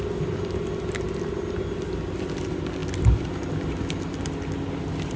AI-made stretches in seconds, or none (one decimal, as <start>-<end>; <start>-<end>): none